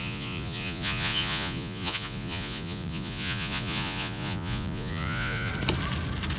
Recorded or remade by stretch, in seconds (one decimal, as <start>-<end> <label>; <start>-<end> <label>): 0.0-5.5 remade; 5.5-6.4 recorded